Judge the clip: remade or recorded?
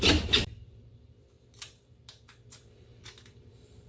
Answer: remade